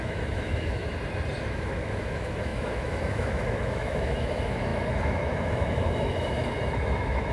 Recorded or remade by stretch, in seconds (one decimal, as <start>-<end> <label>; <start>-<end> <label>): 0.0-0.9 remade; 0.9-1.4 recorded; 1.4-7.3 remade